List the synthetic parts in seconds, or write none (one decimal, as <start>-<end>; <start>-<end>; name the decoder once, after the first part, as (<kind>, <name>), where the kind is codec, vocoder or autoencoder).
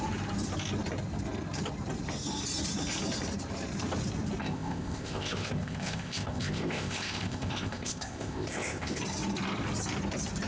4.4-9.0 (codec, ZipCodec)